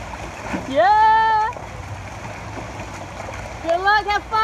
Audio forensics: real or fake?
real